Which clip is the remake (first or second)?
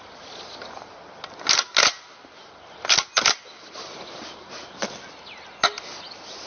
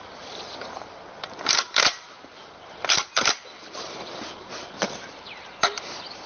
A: second